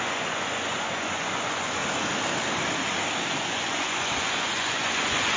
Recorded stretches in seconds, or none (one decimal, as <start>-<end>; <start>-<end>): 1.8-3.4